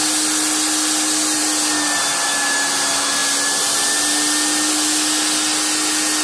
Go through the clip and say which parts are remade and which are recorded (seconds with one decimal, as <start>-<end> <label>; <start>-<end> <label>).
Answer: 0.0-6.2 recorded